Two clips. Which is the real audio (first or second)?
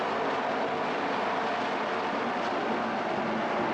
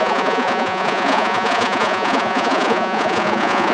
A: first